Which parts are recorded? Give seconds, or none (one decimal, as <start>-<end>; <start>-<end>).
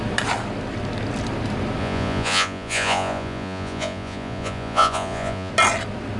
0.0-1.8; 5.5-6.2